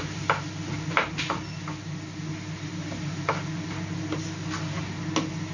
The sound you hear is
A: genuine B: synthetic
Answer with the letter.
A